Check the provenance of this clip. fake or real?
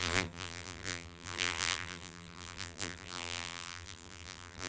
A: fake